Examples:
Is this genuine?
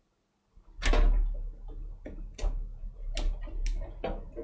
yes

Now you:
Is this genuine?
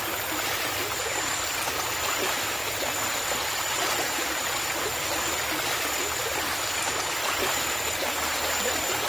yes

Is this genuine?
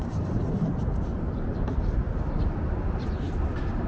no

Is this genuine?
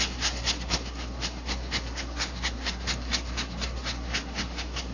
no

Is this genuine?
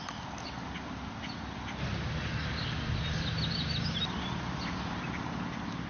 yes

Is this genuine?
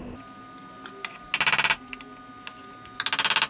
yes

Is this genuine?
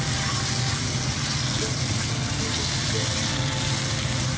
yes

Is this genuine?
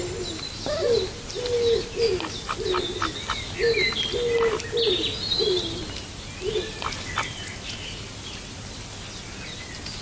yes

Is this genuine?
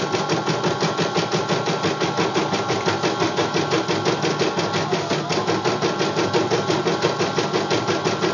yes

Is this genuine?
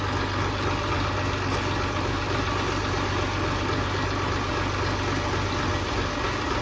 yes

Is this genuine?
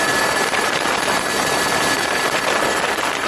no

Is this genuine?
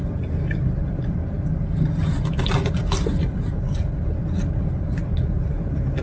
yes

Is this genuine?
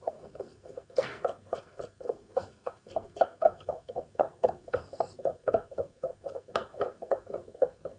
no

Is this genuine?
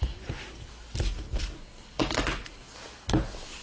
yes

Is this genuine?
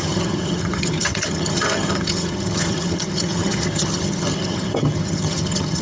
no